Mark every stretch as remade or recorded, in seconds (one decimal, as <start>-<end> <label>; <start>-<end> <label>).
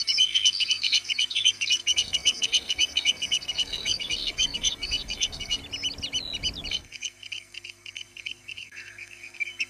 0.0-5.6 remade; 5.6-6.7 recorded; 6.7-9.7 remade